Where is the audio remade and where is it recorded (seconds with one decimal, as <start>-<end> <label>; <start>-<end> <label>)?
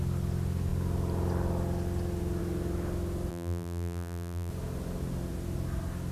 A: 0.0-3.3 recorded; 3.3-4.5 remade; 4.5-6.1 recorded